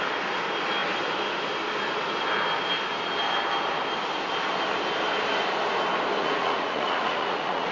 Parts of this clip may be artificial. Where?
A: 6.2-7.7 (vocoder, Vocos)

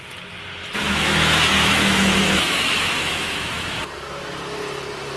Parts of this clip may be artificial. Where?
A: 0.8-3.8 (autoencoder, DAC-VAE)